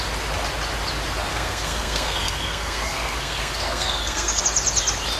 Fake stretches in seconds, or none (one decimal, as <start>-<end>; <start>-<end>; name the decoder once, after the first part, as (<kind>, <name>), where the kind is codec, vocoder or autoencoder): 1.3-4.4 (codec, SNAC)